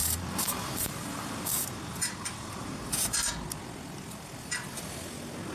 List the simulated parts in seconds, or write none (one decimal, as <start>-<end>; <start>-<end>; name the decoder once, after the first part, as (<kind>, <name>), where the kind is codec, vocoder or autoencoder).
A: 0.0-3.3 (vocoder, BigVGAN v2)